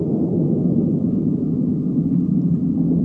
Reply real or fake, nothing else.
real